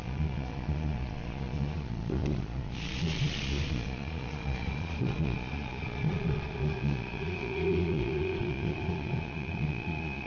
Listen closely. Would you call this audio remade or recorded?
remade